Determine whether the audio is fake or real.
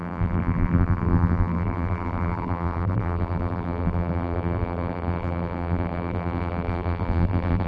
fake